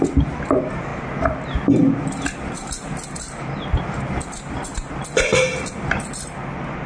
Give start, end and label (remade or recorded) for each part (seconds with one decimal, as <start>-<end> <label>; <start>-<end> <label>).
0.0-6.9 recorded